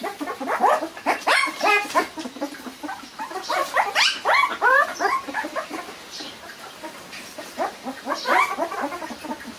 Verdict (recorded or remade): remade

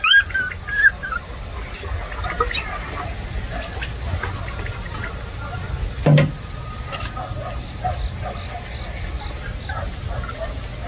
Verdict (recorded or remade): recorded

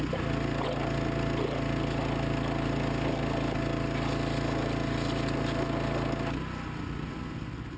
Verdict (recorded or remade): recorded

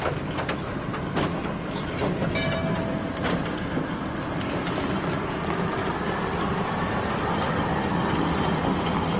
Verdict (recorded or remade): recorded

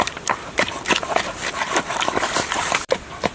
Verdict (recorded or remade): remade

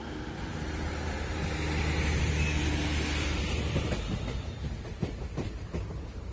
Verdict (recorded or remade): recorded